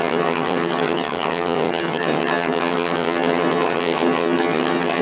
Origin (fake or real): fake